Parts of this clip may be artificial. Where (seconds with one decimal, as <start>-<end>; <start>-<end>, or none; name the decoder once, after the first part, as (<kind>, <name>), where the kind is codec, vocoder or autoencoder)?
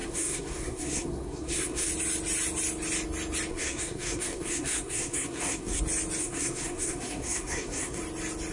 0.0-1.9 (codec, SNAC); 3.5-5.8; 6.2-8.0